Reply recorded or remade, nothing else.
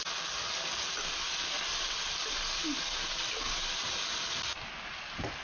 recorded